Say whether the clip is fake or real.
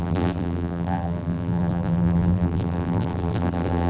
fake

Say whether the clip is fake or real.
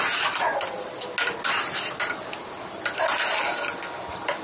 real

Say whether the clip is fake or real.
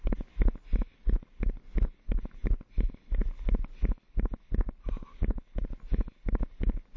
real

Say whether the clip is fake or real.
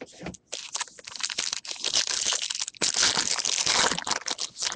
real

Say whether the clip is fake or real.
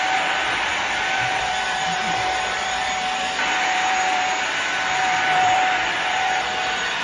fake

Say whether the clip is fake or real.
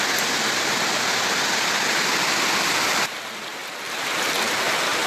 fake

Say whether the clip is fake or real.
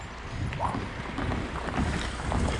real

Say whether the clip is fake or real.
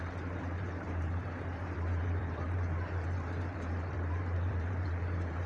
fake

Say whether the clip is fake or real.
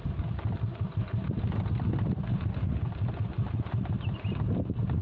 real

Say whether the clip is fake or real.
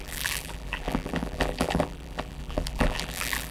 fake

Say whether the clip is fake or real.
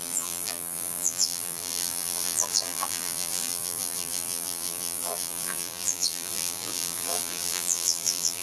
fake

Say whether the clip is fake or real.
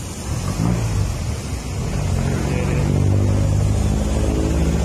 real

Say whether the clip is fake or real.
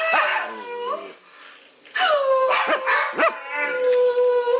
real